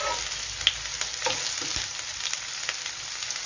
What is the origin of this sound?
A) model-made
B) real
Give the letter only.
B